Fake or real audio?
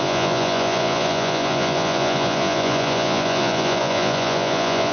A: fake